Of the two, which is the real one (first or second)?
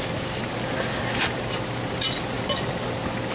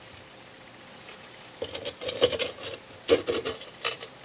first